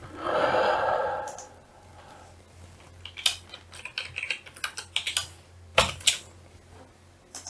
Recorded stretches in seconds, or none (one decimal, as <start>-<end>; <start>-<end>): 0.0-7.5